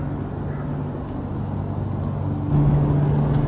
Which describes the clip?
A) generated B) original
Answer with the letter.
B